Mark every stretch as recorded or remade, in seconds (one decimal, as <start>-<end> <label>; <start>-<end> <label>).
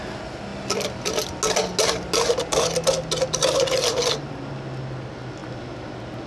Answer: 0.0-6.3 recorded